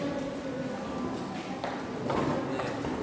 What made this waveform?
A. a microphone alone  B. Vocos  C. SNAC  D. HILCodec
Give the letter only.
A